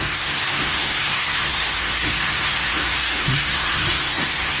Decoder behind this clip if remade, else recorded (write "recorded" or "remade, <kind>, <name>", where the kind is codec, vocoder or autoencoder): remade, codec, SNAC